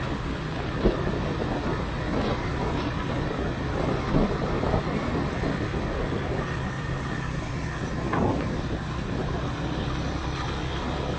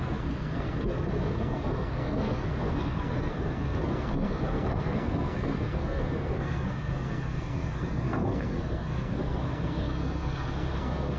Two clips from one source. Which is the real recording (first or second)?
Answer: first